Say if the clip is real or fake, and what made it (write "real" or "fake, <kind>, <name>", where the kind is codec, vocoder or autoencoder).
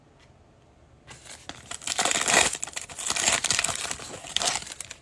real